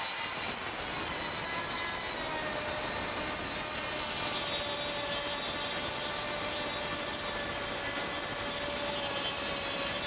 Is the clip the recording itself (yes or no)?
yes